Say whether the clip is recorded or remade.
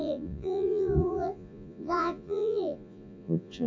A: remade